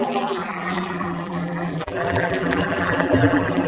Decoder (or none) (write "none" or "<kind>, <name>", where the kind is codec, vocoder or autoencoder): vocoder, BigVGAN v2